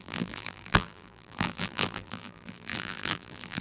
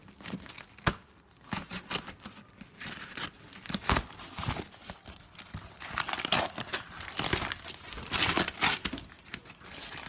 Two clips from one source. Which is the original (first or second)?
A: second